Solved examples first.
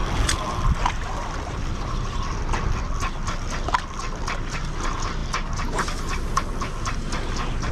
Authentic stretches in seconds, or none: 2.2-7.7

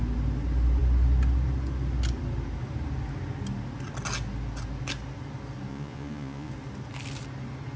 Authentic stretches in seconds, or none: 0.0-5.7; 6.5-7.8

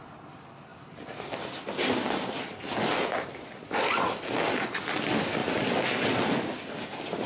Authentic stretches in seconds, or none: 0.0-7.3

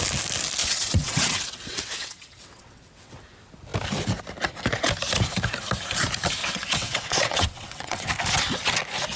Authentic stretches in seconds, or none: 0.0-0.6; 3.2-6.4; 8.1-9.2

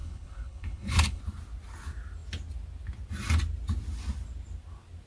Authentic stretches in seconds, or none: 1.2-5.1

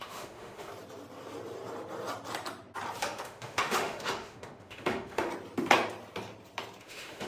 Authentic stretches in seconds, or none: 0.7-3.0; 5.3-6.8